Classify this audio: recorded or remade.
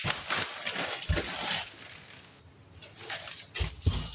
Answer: recorded